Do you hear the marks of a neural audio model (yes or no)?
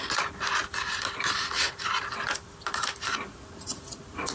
no